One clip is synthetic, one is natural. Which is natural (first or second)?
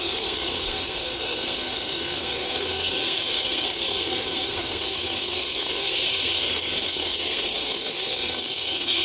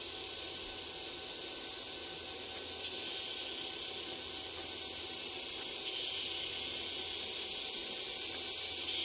second